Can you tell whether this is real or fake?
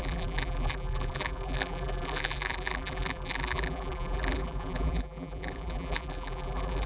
fake